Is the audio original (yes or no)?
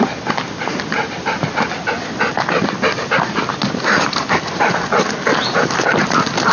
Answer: yes